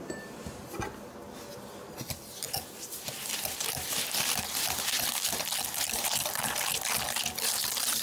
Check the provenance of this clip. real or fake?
fake